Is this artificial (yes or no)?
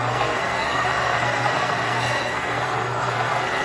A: yes